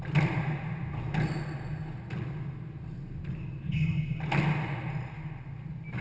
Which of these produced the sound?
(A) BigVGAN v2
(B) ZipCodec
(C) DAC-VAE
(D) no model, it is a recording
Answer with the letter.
D